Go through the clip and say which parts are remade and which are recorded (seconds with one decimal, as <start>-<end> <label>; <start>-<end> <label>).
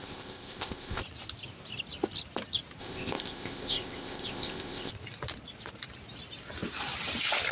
0.0-1.0 remade; 1.0-2.8 recorded; 2.8-4.9 remade; 4.9-7.5 recorded